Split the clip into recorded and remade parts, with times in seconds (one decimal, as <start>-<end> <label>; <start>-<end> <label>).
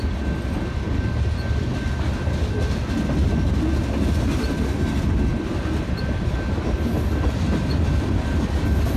0.0-9.0 recorded